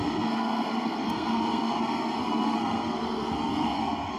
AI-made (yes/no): yes